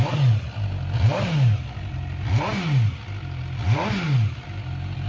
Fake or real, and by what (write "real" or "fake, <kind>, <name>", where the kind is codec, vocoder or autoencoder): real